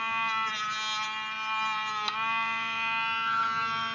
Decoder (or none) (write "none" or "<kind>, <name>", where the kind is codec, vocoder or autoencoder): none